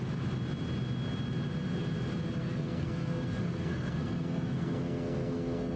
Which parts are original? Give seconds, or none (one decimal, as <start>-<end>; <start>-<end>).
0.0-2.4